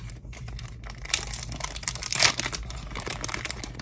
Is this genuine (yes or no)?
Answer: yes